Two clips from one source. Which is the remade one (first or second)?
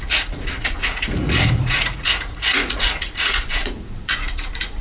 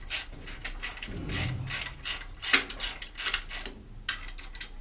first